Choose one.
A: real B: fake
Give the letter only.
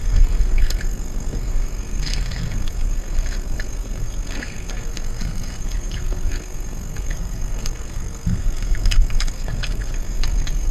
B